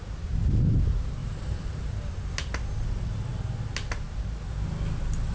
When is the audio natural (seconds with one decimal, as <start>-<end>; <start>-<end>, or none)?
0.0-1.2; 1.7-5.3